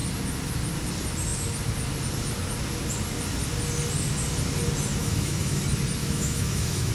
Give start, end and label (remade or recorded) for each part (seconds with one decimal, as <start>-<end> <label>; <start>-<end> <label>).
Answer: 0.0-5.0 recorded; 5.0-5.6 remade; 5.6-6.0 recorded; 6.0-6.9 remade